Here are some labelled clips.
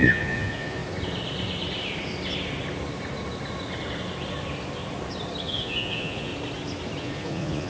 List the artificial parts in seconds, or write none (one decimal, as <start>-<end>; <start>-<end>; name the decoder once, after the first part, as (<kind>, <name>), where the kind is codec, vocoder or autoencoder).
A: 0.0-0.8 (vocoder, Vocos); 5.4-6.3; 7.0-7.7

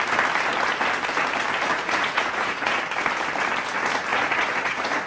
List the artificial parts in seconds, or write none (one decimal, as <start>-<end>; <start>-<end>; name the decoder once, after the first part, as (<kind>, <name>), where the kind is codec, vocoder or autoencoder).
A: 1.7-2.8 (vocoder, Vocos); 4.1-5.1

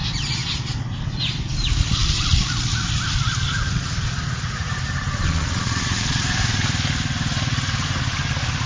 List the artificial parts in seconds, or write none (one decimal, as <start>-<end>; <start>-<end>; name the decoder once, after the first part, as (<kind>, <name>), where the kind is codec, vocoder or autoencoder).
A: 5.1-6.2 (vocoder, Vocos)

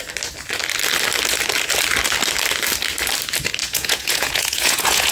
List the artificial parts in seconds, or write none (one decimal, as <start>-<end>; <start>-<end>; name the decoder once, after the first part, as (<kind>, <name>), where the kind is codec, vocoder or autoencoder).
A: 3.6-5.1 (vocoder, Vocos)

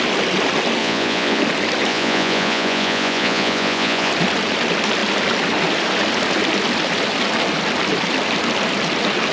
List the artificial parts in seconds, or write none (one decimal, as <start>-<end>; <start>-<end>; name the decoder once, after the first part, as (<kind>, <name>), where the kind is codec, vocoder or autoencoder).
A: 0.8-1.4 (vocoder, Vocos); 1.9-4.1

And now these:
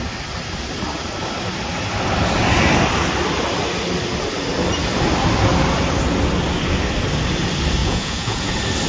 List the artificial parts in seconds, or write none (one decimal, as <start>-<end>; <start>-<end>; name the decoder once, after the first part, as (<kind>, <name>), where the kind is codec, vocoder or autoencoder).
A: 7.8-8.5 (vocoder, Vocos)